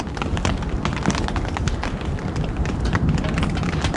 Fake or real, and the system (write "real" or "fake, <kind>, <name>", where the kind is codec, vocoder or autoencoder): real